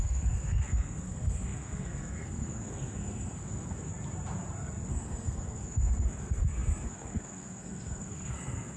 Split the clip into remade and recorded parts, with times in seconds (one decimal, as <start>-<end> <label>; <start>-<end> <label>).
0.0-3.9 remade; 3.9-4.9 recorded; 4.9-8.8 remade